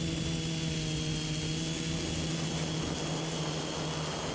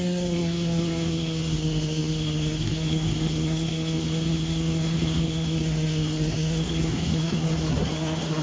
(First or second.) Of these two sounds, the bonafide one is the first